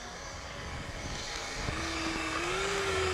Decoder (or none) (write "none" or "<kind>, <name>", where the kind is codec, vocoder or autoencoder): codec, DAC